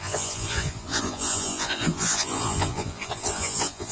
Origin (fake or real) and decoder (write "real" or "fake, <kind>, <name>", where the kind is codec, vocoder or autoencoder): fake, vocoder, Vocos